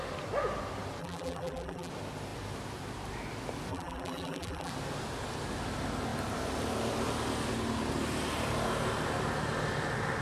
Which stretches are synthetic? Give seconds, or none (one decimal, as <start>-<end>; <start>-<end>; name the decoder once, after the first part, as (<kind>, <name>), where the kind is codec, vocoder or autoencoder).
1.0-1.9 (vocoder, BigVGAN v2); 3.7-4.7